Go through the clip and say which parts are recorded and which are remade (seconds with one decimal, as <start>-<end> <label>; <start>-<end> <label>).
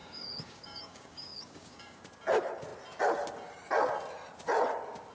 0.0-2.0 remade; 2.0-5.1 recorded